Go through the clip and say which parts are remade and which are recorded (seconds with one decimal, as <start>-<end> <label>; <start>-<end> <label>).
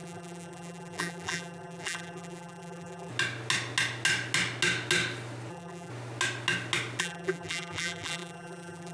0.0-3.1 remade; 3.1-5.5 recorded; 5.5-5.9 remade; 5.9-7.0 recorded; 7.0-8.9 remade